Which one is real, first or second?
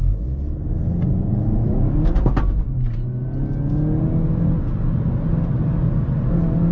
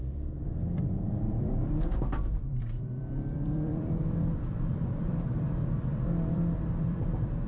first